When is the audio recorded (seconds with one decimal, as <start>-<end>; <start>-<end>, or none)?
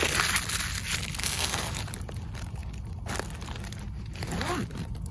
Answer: 0.0-1.2; 1.7-5.1